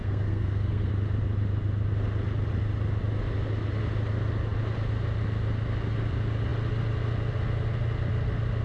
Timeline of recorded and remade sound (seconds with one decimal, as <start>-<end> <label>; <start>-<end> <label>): 0.0-0.9 remade; 0.9-8.6 recorded